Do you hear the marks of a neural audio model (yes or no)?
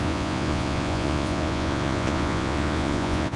yes